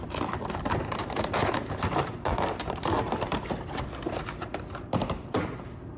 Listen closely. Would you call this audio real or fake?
fake